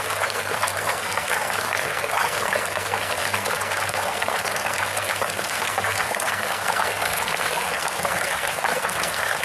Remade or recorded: remade